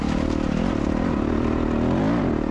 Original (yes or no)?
yes